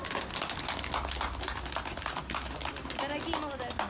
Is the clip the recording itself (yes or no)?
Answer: yes